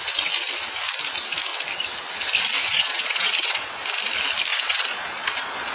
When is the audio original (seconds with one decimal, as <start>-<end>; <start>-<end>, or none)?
0.0-2.7; 3.8-4.5